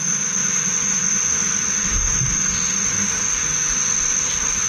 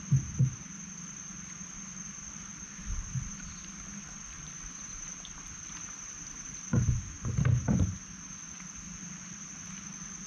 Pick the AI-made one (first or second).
first